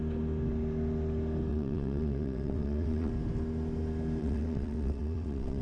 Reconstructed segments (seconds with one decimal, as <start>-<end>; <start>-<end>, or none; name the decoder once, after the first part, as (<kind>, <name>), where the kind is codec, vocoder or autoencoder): 1.5-3.1 (vocoder, WaveNeXt); 4.2-5.6